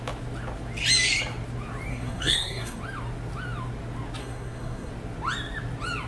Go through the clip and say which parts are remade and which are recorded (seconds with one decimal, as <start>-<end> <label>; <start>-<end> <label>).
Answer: 0.0-1.9 recorded; 1.9-2.8 remade; 2.8-4.2 recorded; 4.2-4.9 remade; 4.9-6.1 recorded